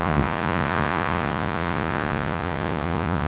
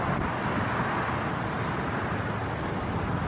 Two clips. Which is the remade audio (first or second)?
first